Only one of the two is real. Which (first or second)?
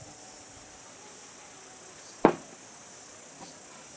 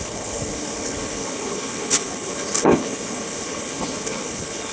first